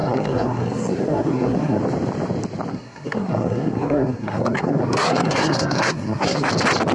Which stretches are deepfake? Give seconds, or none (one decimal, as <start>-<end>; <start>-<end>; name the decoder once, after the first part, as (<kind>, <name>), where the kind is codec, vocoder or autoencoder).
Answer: 0.0-1.8 (codec, SNAC); 2.7-6.5